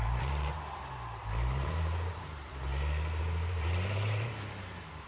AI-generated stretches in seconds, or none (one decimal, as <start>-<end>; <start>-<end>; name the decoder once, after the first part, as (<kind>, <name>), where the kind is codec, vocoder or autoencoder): 0.0-2.7 (vocoder, BigVGAN v2); 3.2-5.1